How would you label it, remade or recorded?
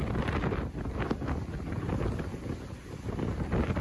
recorded